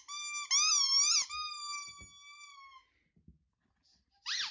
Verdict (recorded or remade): recorded